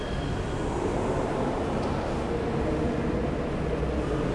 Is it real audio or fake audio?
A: real